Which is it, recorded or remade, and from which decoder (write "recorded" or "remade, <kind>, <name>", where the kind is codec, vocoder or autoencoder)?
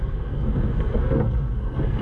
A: remade, codec, SNAC